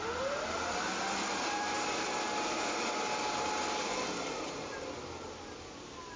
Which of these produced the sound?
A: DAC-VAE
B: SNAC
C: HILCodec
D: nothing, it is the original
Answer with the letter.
D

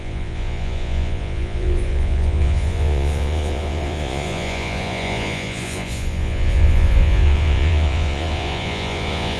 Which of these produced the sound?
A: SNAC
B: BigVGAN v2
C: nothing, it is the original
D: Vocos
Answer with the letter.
D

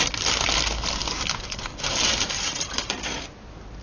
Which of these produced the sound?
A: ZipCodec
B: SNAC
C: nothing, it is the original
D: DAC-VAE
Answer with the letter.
C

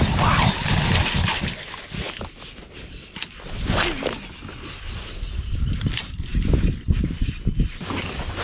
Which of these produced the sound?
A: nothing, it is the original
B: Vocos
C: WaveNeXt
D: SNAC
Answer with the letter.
A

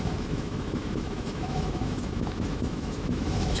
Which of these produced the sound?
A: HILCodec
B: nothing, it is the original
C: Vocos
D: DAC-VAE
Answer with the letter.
D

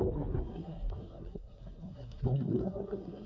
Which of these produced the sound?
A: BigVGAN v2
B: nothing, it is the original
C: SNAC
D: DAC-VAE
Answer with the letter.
C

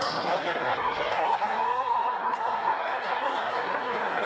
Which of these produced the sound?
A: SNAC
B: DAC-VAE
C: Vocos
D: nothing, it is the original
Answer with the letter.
A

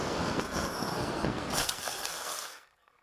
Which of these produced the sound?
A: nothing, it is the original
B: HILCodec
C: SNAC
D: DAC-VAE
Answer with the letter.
C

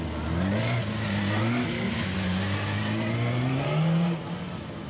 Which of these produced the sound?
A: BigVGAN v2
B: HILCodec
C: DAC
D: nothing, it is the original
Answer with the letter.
D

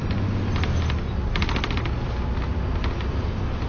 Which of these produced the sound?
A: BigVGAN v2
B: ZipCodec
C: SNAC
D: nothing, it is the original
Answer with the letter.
D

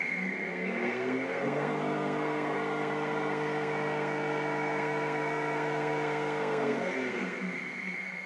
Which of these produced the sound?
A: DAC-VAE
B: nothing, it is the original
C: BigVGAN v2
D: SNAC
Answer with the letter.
D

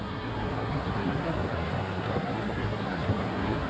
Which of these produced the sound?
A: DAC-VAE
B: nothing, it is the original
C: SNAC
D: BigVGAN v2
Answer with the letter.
C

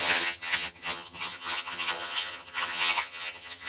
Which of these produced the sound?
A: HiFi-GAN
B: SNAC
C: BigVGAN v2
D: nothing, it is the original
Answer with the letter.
A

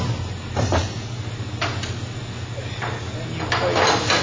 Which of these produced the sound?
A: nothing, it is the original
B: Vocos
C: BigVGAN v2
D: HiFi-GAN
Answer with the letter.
A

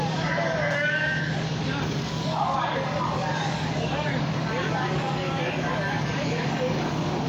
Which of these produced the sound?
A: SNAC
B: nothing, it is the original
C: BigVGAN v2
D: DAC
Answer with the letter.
D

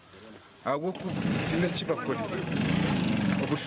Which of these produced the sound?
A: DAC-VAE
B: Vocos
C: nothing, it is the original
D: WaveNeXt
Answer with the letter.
C